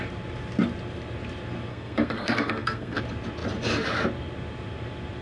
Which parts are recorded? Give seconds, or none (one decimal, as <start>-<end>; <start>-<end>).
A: 0.0-1.7; 3.0-5.2